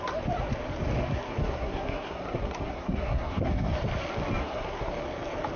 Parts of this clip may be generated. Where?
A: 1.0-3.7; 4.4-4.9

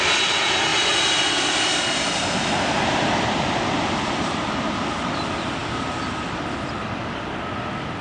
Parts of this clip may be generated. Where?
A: none

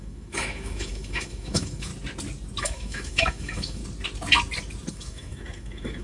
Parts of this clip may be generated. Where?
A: 0.0-1.9; 2.6-3.8; 4.9-6.0

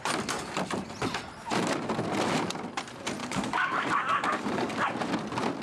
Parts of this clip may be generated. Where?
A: 3.2-4.8

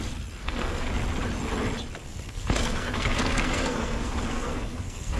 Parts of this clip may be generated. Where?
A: 0.4-0.9; 2.0-5.2

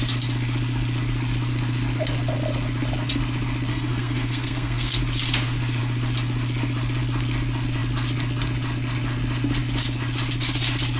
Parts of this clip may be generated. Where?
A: 3.7-5.0

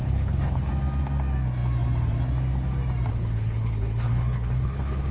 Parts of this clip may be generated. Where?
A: 0.0-0.7; 3.1-5.1